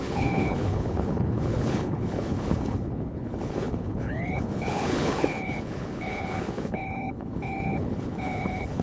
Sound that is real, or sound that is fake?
fake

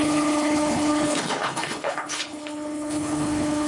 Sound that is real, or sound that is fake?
fake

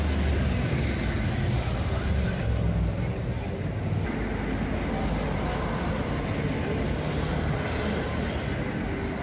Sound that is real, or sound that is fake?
real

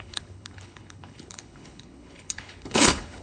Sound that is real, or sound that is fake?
fake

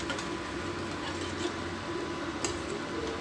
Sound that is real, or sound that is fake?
real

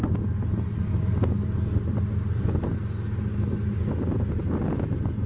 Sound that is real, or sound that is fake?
real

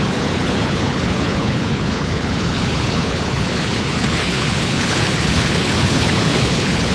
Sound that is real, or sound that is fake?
fake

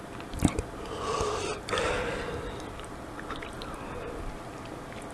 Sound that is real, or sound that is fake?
real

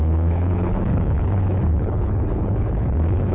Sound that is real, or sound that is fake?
fake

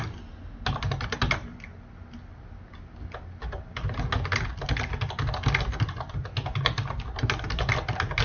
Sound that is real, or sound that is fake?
real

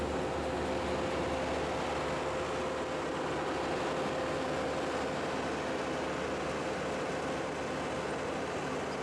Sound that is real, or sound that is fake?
real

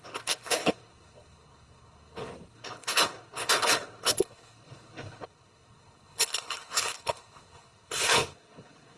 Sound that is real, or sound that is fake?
fake